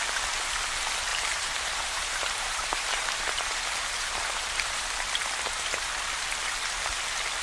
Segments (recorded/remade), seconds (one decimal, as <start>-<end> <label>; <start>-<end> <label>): 0.0-1.1 recorded; 1.1-4.8 remade; 4.8-7.4 recorded